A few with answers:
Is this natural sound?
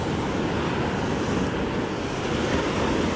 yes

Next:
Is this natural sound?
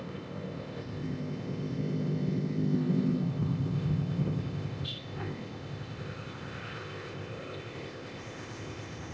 no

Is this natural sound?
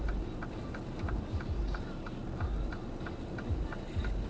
yes